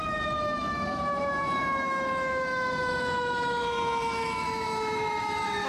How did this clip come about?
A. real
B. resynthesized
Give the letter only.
B